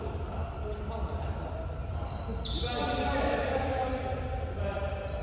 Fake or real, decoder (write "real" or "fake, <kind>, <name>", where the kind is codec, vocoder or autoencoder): real